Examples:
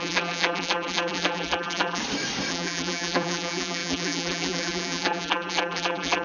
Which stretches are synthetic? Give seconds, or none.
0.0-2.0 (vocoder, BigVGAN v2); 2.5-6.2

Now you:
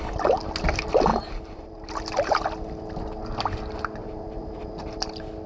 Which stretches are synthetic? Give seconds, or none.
1.1-1.9 (vocoder, BigVGAN v2); 4.0-4.8

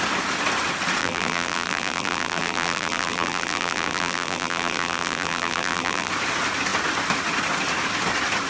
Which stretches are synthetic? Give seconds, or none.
1.0-6.1 (vocoder, BigVGAN v2)

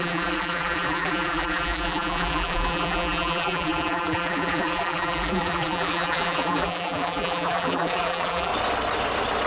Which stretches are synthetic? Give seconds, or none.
0.0-8.5 (vocoder, BigVGAN v2)